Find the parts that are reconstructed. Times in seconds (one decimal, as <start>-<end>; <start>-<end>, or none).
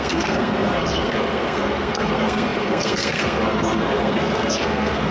0.0-5.1